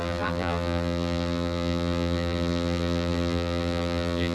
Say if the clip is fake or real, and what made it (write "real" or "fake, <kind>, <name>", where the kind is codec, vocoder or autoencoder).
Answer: fake, vocoder, BigVGAN v2